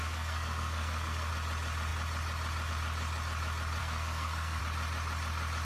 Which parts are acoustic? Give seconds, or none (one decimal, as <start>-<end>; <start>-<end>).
1.3-3.8; 4.6-5.6